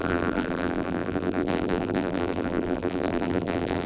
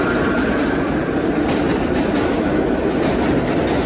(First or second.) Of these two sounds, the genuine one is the second